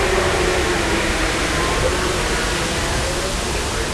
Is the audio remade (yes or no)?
no